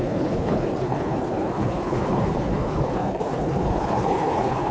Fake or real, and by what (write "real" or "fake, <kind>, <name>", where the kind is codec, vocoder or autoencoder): fake, codec, HILCodec